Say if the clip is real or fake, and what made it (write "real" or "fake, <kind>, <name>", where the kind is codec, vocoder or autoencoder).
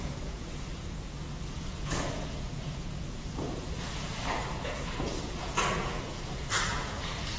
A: fake, vocoder, Vocos